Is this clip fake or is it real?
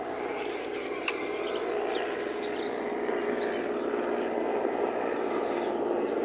real